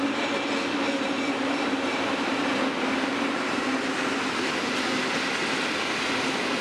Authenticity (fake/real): real